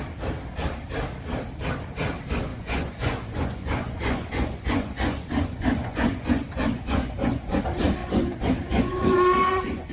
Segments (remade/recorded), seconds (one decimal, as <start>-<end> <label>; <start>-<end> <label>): 0.0-2.5 recorded; 2.5-7.6 remade; 7.6-8.0 recorded; 8.0-9.9 remade